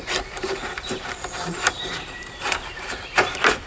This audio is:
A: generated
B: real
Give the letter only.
A